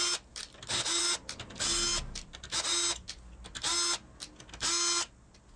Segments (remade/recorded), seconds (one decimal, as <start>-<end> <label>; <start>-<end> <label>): 0.0-5.6 recorded